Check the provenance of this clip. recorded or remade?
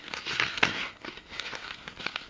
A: remade